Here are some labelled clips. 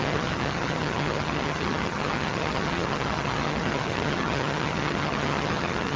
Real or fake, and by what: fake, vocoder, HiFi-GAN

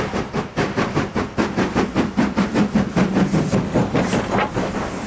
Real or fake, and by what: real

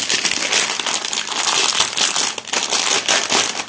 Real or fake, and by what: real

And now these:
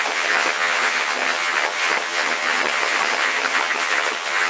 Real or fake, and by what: fake, vocoder, HiFi-GAN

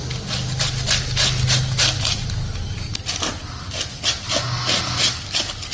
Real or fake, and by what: real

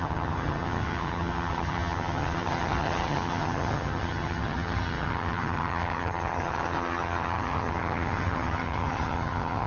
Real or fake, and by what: fake, vocoder, HiFi-GAN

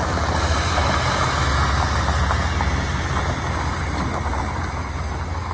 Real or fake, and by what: real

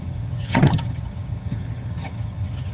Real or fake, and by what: fake, vocoder, HiFi-GAN